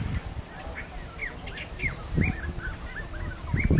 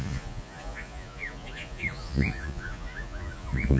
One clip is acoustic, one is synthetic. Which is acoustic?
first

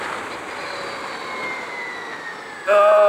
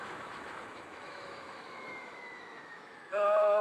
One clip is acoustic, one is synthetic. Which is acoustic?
first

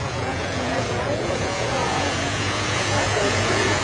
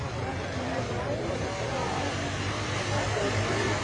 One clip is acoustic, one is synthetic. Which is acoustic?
second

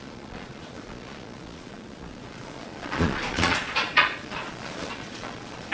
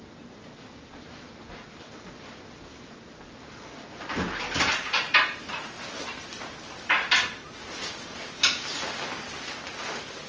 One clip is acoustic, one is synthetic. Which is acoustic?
second